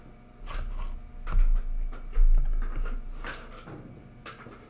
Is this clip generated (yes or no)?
no